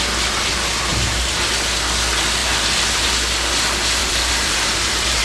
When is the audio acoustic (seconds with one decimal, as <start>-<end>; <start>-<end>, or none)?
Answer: 0.0-0.9; 1.4-2.4; 3.1-4.0